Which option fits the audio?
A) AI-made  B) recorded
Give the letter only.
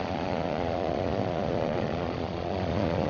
A